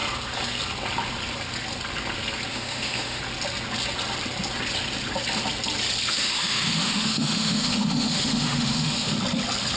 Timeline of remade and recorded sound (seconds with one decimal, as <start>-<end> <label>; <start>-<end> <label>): 0.0-2.5 recorded; 2.5-3.2 remade; 3.2-6.1 recorded; 6.1-9.1 remade; 9.1-9.8 recorded